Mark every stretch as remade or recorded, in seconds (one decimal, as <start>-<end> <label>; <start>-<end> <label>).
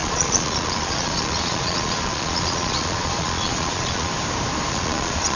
0.0-4.1 remade; 4.1-4.7 recorded; 4.7-5.4 remade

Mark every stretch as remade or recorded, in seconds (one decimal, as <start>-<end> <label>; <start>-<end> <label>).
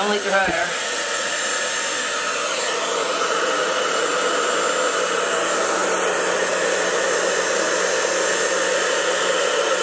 0.0-0.4 recorded; 0.4-1.5 remade; 1.5-3.0 recorded; 3.0-4.2 remade; 4.2-9.8 recorded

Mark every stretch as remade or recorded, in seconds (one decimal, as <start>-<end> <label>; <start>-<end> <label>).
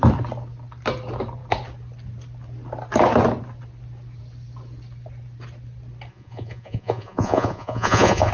0.0-6.1 recorded; 6.1-8.3 remade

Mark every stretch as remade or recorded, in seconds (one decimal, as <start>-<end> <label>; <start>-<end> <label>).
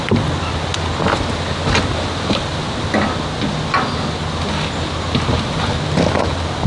0.0-6.7 recorded